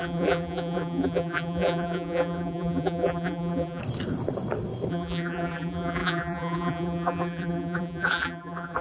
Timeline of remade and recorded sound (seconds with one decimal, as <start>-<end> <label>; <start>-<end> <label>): 0.0-3.8 remade; 3.8-4.9 recorded; 4.9-8.8 remade